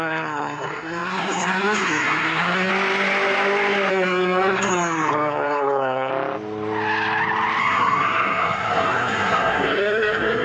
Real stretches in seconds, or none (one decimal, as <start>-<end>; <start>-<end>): 2.7-3.9; 6.1-7.6